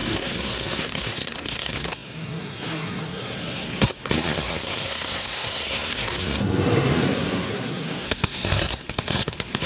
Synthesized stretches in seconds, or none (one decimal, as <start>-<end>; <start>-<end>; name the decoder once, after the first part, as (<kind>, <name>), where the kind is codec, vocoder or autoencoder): 0.0-9.7 (codec, SNAC)